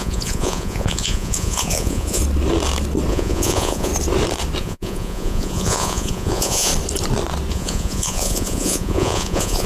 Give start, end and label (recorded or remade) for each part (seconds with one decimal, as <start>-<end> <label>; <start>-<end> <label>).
0.0-2.2 remade; 2.2-3.1 recorded; 3.1-3.9 remade; 3.9-4.6 recorded; 4.6-6.7 remade; 6.7-7.5 recorded; 7.5-9.7 remade

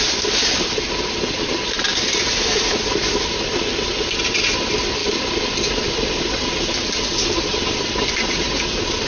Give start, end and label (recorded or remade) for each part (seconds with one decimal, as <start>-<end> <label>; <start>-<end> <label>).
0.0-9.1 recorded

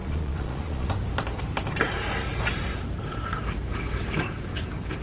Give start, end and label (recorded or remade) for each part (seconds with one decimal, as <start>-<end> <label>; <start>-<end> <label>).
0.0-0.9 remade; 0.9-5.0 recorded

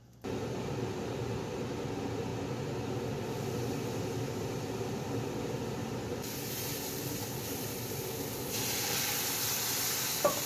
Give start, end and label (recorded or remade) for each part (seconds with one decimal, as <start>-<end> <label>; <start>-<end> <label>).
0.0-10.5 recorded

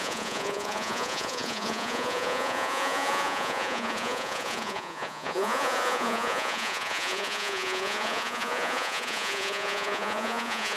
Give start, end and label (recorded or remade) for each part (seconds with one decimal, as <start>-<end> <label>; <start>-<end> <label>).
0.0-10.8 remade